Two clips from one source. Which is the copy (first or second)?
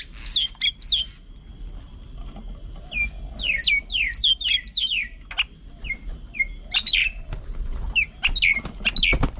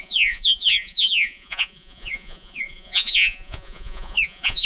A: second